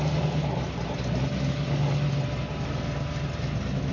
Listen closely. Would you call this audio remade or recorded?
recorded